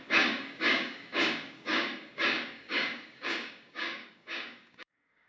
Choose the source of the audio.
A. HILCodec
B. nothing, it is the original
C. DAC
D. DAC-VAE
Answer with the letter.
C